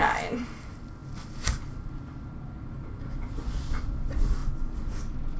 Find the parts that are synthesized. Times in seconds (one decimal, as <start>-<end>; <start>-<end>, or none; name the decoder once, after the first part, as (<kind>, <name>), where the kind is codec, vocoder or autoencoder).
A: none